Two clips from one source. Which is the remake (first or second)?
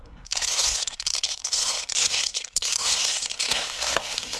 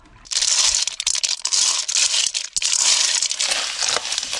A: first